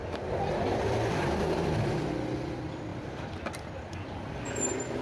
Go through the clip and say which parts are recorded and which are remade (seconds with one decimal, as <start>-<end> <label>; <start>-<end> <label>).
0.0-2.1 remade; 2.1-2.9 recorded; 2.9-3.5 remade; 3.5-5.0 recorded